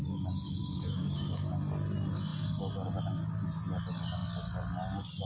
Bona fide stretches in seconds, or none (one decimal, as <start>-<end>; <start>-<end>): 0.0-0.6; 1.5-5.3